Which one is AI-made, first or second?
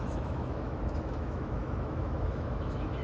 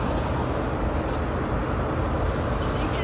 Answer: first